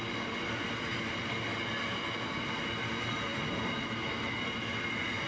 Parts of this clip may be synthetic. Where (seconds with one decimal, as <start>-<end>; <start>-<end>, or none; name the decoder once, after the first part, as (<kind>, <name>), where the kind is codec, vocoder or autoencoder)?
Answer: 0.9-1.6 (vocoder, BigVGAN v2)